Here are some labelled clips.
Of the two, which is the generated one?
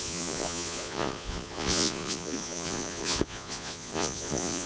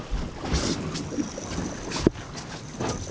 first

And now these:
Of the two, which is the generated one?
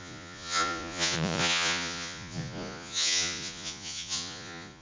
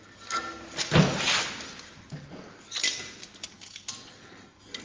first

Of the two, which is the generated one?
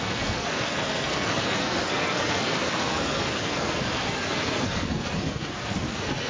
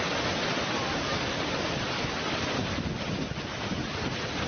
first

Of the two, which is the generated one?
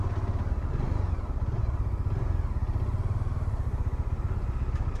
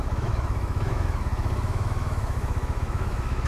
second